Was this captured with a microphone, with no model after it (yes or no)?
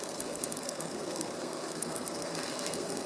no